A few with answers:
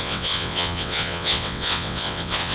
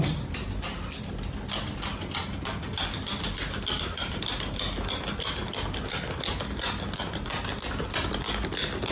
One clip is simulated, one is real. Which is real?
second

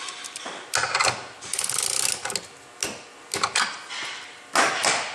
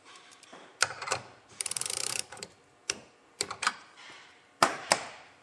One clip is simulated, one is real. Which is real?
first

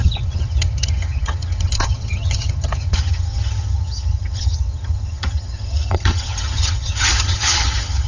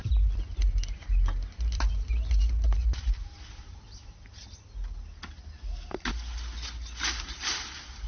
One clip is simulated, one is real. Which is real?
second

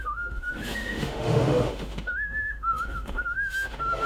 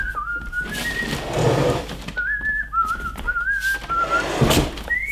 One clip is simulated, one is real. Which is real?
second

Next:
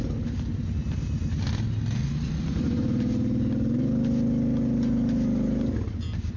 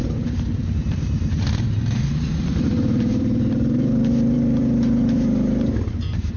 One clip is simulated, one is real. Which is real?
first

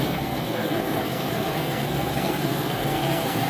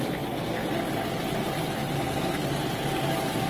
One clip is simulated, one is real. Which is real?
second